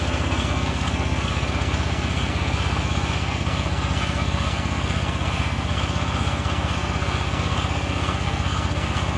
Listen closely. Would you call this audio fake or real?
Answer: fake